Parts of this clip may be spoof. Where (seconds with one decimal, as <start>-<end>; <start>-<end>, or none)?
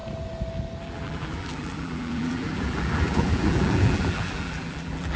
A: 0.8-5.2